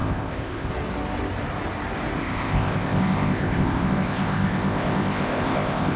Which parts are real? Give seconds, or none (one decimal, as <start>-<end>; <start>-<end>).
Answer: 0.7-2.2